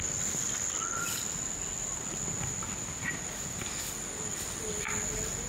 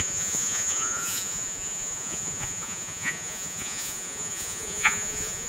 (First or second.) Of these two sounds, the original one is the first